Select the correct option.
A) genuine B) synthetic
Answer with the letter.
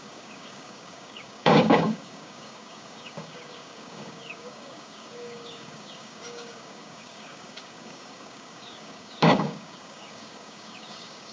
B